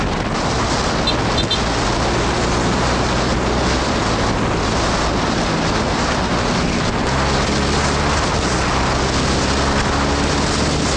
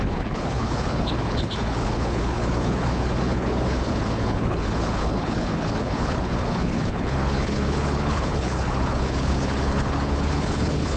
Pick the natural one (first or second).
first